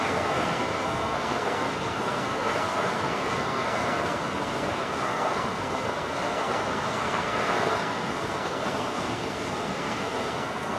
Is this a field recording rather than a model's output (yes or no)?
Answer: no